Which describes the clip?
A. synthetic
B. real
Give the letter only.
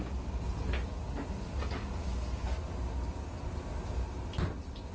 B